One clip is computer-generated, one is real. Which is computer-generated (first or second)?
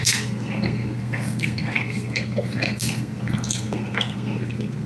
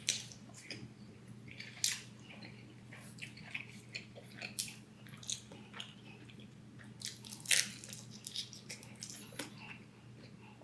first